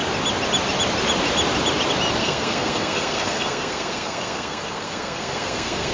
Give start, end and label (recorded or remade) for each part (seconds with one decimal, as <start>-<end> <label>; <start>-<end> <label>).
0.0-2.2 recorded; 2.2-5.9 remade